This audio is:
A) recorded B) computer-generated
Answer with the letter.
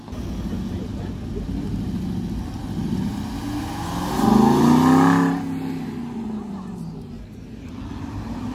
A